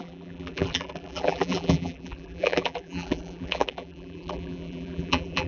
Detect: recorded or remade remade